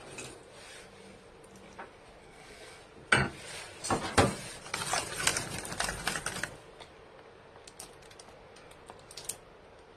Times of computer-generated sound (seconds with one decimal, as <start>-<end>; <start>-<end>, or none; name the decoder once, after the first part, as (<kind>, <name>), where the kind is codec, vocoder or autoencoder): 2.2-2.8 (codec, SNAC)